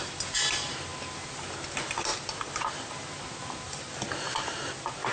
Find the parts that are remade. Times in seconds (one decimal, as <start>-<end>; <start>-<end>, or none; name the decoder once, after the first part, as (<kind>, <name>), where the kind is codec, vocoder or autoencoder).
none